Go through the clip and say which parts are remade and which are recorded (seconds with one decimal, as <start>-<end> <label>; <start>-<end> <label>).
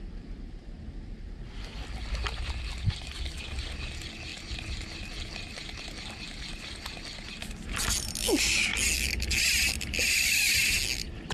0.0-11.3 recorded